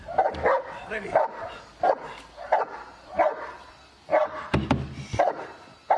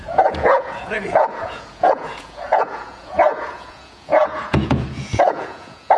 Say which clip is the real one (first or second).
first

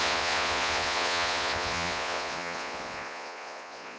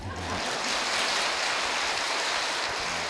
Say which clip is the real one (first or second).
second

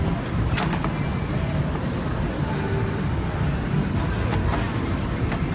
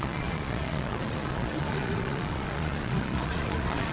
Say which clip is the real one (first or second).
first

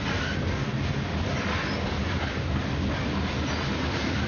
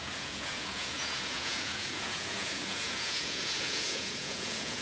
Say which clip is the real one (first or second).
first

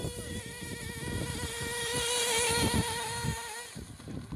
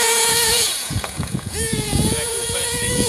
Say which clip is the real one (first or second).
first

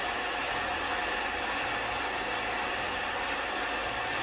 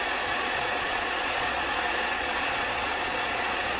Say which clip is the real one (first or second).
first